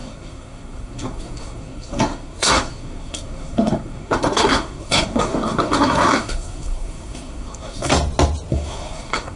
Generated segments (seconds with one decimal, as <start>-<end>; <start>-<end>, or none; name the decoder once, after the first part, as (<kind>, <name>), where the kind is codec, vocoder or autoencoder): 0.0-7.9 (codec, SNAC); 8.5-9.4